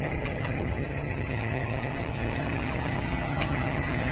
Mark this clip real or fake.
fake